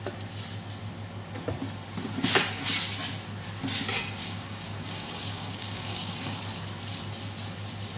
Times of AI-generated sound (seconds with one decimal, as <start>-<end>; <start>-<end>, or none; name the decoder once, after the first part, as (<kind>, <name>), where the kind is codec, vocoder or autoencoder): 4.2-6.4 (codec, DAC)